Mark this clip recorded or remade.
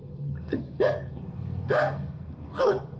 remade